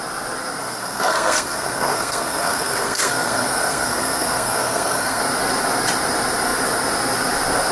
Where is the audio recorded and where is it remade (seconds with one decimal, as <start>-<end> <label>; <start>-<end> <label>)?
0.0-0.6 recorded; 0.6-5.2 remade; 5.2-7.7 recorded